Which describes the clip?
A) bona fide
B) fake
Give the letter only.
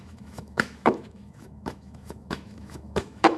B